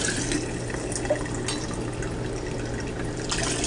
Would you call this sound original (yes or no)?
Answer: yes